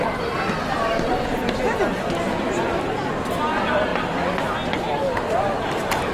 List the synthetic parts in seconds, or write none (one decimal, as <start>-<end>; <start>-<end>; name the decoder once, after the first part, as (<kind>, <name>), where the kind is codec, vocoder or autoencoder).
none